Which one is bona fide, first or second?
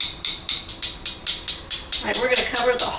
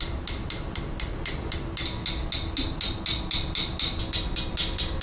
second